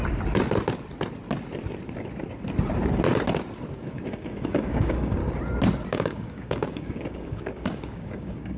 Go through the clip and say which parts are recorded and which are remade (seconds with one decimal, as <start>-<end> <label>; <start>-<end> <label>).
0.0-3.7 recorded; 3.7-5.2 remade; 5.2-5.9 recorded; 5.9-8.6 remade